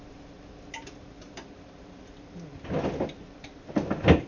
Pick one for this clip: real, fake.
real